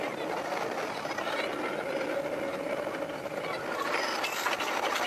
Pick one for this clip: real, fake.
real